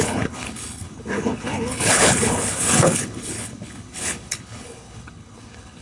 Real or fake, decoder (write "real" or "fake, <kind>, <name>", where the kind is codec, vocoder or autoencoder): fake, codec, HILCodec